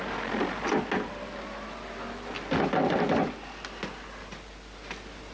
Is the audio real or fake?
real